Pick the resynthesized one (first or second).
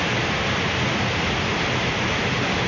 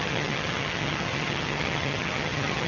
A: second